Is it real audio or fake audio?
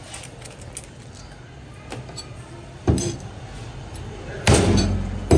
real